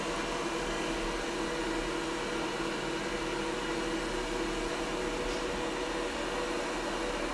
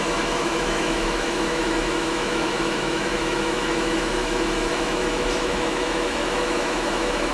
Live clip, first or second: first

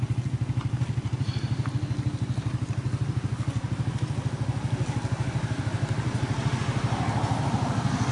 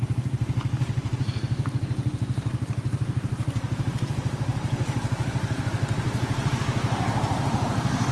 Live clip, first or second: first